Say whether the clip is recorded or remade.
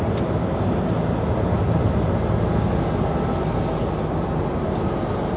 recorded